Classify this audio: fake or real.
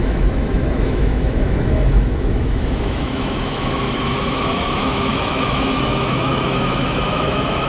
fake